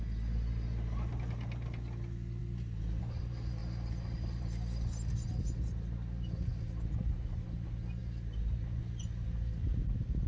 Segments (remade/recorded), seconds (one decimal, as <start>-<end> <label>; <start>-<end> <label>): 0.0-10.3 recorded

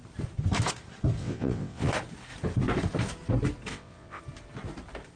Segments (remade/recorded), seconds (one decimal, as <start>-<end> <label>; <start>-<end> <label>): 0.0-1.2 recorded; 1.2-1.9 remade; 1.9-3.7 recorded; 3.7-4.2 remade; 4.2-5.2 recorded

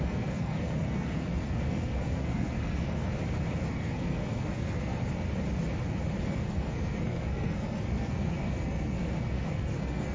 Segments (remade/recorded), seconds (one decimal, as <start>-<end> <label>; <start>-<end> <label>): 0.0-3.1 remade; 3.1-3.7 recorded; 3.7-5.0 remade; 5.0-6.2 recorded; 6.2-10.1 remade

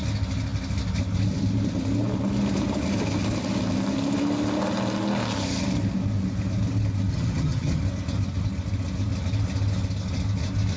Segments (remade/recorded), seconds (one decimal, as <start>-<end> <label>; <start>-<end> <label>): 0.0-7.1 recorded; 7.1-7.8 remade; 7.8-10.8 recorded

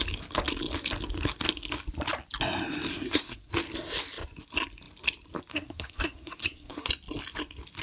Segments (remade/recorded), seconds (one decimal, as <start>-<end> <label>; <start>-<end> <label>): 0.0-2.9 recorded; 2.9-3.5 remade; 3.5-5.5 recorded; 5.5-6.9 remade; 6.9-7.8 recorded

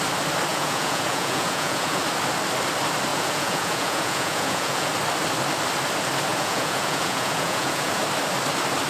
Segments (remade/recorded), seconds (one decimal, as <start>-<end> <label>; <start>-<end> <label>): 0.0-0.5 recorded; 0.5-2.0 remade; 2.0-3.1 recorded; 3.1-4.9 remade; 4.9-6.3 recorded; 6.3-8.0 remade; 8.0-8.9 recorded

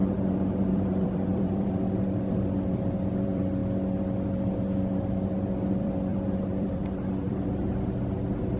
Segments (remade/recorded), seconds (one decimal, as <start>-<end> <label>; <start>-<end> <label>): 0.0-0.7 recorded; 0.7-3.6 remade; 3.6-5.0 recorded; 5.0-8.6 remade